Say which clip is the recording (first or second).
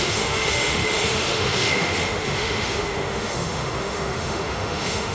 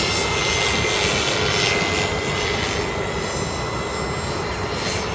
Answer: second